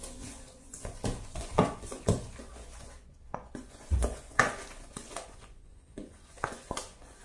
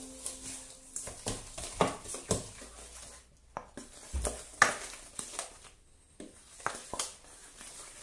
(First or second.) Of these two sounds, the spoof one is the first